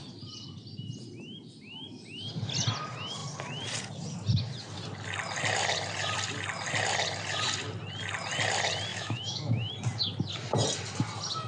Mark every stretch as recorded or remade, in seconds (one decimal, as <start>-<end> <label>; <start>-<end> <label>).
0.0-8.9 recorded; 8.9-9.7 remade; 9.7-11.5 recorded